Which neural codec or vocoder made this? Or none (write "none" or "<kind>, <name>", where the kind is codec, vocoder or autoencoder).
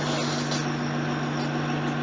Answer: none